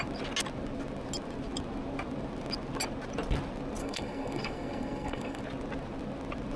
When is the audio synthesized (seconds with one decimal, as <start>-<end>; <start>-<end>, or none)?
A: 3.8-5.4